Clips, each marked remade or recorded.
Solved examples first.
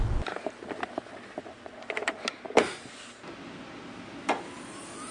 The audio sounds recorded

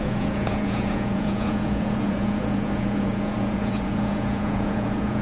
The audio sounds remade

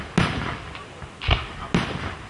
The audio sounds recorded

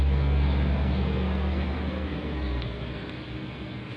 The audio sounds remade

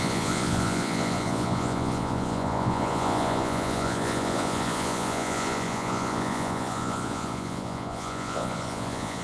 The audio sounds remade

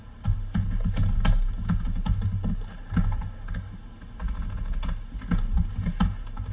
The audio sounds recorded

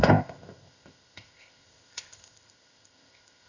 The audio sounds remade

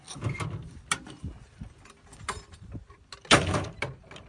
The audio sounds recorded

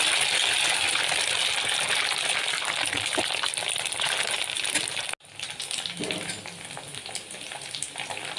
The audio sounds recorded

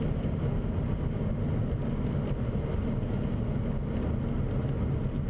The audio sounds recorded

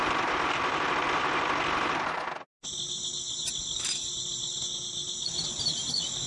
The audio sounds recorded